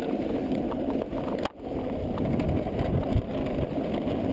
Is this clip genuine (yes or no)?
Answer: no